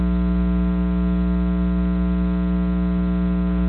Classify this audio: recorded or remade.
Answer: recorded